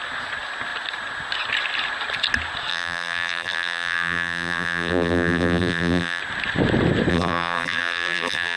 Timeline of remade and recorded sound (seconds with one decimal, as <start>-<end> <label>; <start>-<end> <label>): 0.0-2.7 recorded; 2.7-6.2 remade; 6.2-7.1 recorded; 7.1-8.6 remade